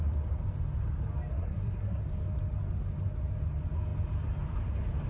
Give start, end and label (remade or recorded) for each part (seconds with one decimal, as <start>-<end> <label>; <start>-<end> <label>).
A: 0.0-1.3 recorded; 1.3-2.0 remade; 2.0-5.1 recorded